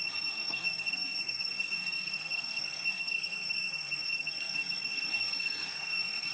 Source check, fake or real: fake